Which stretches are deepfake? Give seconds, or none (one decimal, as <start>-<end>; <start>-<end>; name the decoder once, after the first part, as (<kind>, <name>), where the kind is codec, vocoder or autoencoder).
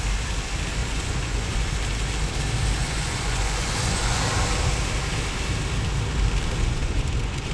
0.8-1.7 (vocoder, Vocos); 2.8-4.2; 6.6-7.5